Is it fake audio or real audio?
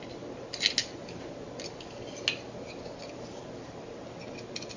real